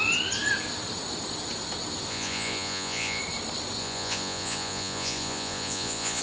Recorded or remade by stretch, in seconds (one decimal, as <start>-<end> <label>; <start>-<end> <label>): 0.0-2.1 recorded; 2.1-3.2 remade; 3.2-3.8 recorded; 3.8-6.2 remade